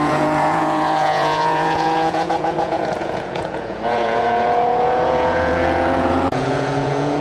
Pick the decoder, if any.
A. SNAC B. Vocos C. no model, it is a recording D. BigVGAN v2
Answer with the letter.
B